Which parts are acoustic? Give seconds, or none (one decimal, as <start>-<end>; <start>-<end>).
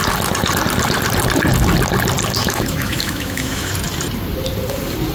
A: 0.0-2.4; 3.7-5.1